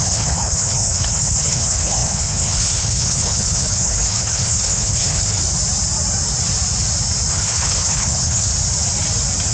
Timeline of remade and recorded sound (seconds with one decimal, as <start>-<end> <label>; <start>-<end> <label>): 0.0-5.4 remade; 5.4-7.3 recorded; 7.3-8.5 remade; 8.5-9.5 recorded